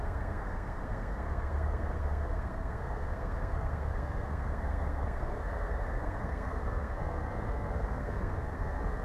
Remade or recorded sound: remade